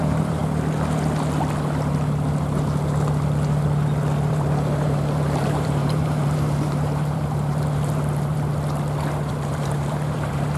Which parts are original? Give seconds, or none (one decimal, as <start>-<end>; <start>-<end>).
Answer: 0.4-4.3; 8.5-9.3